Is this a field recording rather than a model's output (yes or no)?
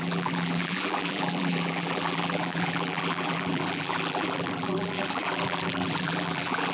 no